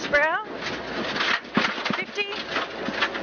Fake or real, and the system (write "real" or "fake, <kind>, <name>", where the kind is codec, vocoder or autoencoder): real